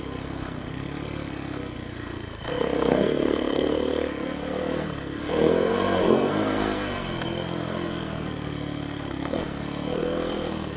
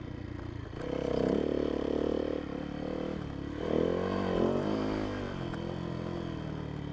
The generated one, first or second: first